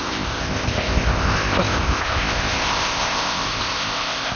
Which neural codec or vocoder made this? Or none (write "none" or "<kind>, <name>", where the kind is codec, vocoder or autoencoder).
codec, ZipCodec